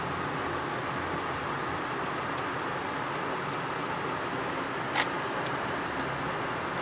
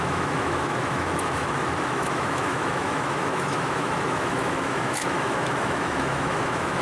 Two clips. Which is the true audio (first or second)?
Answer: first